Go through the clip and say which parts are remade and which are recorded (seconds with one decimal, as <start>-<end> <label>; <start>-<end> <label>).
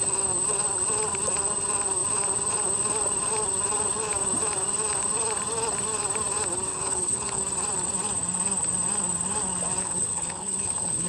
0.0-6.7 recorded; 6.7-7.4 remade; 7.4-9.8 recorded; 9.8-11.1 remade